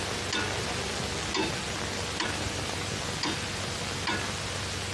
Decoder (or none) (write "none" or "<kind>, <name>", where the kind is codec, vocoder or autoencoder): none